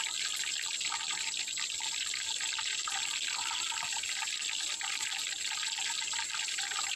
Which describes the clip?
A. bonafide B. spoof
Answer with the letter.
A